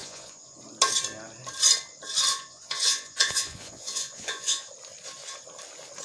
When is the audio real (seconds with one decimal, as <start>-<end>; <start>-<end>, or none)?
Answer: 0.6-2.3; 4.7-6.0